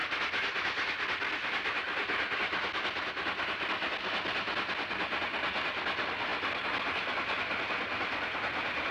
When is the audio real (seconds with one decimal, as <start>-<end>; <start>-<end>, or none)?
0.0-8.9